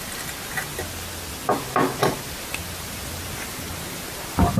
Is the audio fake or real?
real